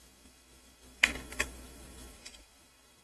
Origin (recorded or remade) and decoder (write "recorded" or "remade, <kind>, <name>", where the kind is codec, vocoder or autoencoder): remade, autoencoder, DAC-VAE